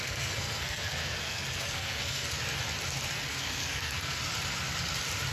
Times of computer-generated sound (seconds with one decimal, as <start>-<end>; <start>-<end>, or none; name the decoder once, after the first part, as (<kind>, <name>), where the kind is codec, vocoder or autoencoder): 0.0-2.4 (codec, SNAC); 3.3-4.2